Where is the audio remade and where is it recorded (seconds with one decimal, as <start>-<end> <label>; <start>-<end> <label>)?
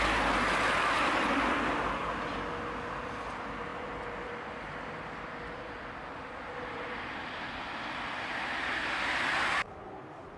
0.0-10.4 recorded